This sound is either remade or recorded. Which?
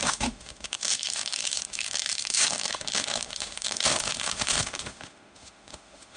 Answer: remade